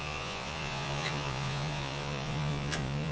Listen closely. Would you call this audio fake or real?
fake